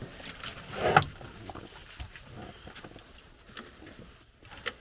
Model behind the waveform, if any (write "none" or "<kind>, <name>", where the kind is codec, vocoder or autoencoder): none